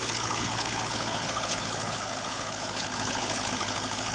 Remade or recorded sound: remade